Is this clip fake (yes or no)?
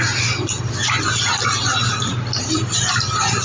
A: no